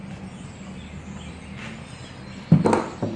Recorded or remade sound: recorded